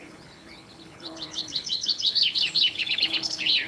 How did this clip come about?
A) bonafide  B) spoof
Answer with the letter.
B